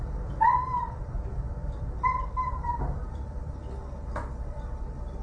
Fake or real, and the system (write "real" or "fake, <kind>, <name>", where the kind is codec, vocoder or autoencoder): fake, vocoder, BigVGAN v2